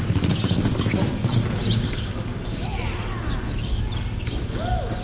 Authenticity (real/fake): real